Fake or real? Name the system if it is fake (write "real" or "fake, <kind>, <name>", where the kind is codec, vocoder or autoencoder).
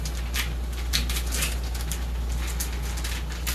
real